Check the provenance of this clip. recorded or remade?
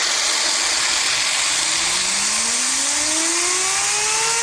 recorded